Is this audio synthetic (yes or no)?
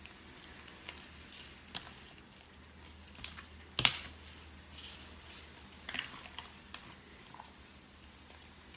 no